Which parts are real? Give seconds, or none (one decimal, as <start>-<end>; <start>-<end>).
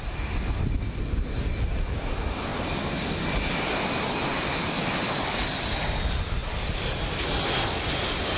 0.0-8.4